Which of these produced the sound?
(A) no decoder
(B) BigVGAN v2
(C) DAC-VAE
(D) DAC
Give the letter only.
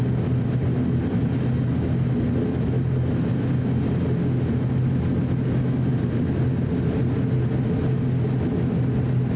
A